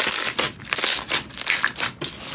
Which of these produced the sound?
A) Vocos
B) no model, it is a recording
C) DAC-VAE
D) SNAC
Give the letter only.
B